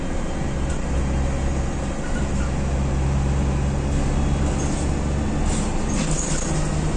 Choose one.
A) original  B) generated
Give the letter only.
A